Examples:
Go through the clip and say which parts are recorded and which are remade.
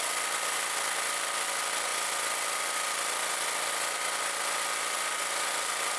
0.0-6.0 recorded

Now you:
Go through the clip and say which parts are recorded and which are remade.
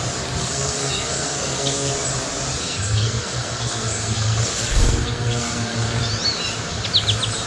0.0-0.4 recorded; 0.4-1.9 remade; 1.9-2.6 recorded; 2.6-6.0 remade; 6.0-7.5 recorded